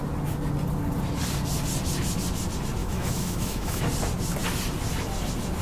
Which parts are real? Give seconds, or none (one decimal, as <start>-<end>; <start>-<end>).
0.0-2.8; 3.8-5.6